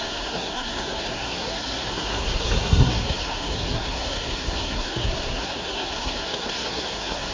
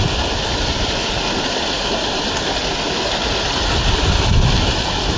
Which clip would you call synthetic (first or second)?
first